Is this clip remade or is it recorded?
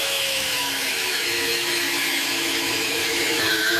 remade